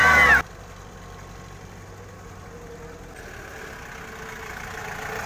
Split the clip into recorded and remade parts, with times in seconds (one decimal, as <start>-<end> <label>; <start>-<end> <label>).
0.0-5.3 recorded